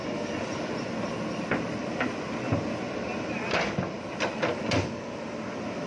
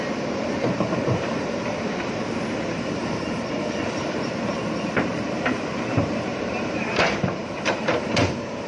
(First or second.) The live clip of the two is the first